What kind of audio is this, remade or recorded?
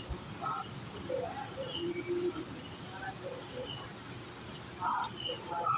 recorded